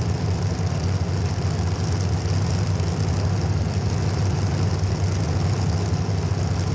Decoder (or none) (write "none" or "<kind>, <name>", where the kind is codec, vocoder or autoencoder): none